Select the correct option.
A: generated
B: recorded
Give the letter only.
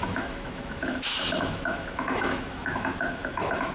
A